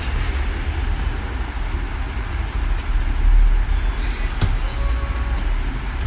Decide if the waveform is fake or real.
real